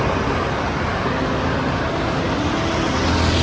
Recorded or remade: recorded